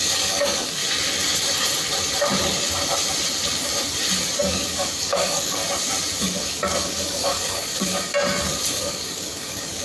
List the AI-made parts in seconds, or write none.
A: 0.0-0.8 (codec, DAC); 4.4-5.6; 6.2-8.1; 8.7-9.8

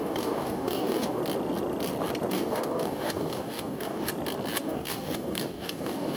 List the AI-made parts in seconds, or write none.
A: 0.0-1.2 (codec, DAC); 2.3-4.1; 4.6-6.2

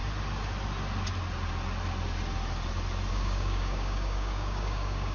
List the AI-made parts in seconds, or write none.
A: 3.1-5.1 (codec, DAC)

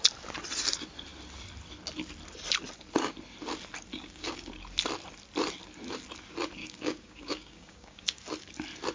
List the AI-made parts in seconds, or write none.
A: 3.9-4.5 (codec, DAC); 6.6-8.2

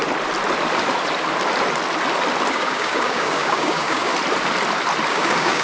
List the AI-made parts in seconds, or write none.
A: 2.5-4.1 (codec, DAC); 5.1-5.6

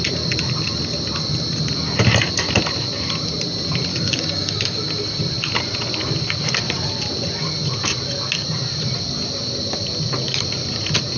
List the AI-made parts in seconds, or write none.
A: 3.9-4.8 (codec, DAC)